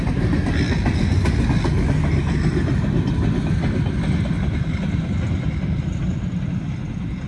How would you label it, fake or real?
real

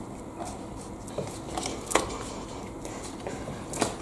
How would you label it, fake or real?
real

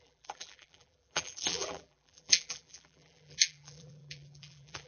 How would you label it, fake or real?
fake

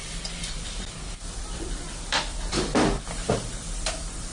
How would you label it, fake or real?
fake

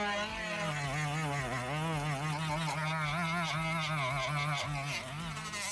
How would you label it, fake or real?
real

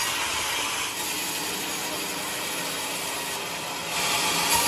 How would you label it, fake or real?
real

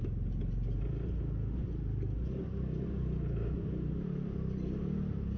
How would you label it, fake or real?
real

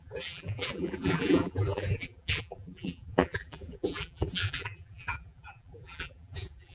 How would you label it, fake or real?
fake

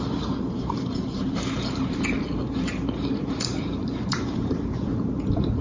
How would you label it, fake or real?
fake